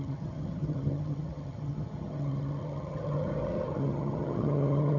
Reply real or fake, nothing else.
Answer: fake